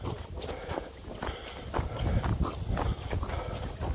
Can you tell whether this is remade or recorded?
recorded